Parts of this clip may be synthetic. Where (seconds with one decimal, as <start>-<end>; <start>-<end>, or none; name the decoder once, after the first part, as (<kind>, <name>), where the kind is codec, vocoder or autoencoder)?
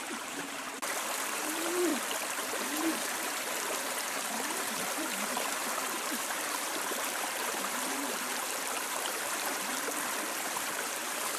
0.0-0.7 (vocoder, BigVGAN v2); 1.4-1.9; 2.6-9.7; 10.4-11.4